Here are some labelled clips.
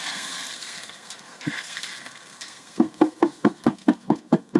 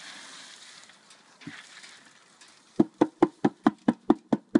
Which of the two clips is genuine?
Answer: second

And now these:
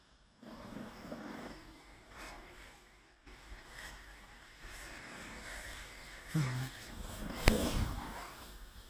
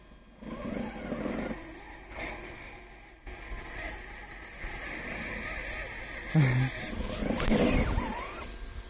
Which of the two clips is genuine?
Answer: second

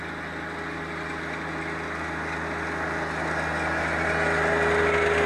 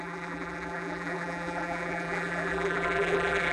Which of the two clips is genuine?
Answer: first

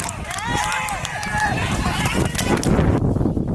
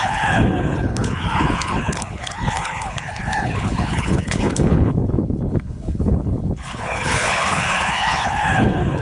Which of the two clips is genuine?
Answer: first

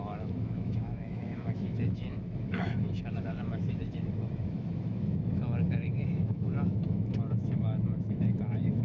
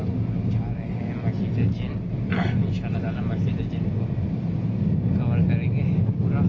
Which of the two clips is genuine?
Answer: second